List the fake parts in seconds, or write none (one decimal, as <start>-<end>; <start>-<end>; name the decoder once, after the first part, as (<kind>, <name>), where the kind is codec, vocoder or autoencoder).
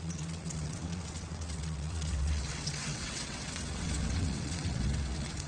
0.0-5.5 (vocoder, WaveNeXt)